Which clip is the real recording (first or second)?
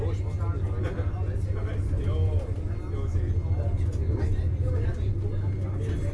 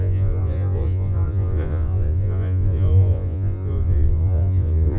first